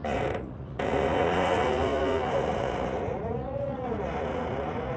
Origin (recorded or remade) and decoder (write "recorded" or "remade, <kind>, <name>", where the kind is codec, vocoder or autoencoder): remade, vocoder, Vocos